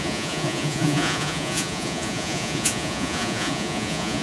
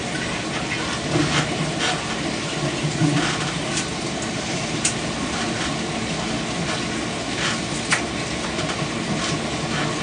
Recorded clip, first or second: second